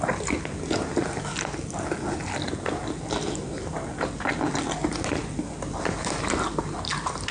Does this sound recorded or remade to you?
recorded